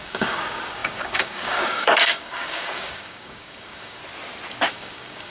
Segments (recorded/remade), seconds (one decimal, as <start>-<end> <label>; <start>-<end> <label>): 0.0-4.0 remade; 4.0-4.7 recorded; 4.7-5.3 remade